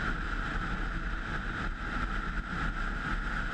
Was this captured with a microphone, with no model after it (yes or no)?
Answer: yes